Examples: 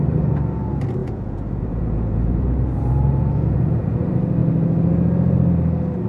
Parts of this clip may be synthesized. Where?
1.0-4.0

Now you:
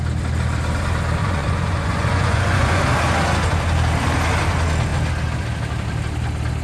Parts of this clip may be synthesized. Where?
1.2-2.8